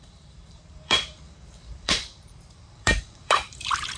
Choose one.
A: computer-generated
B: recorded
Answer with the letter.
A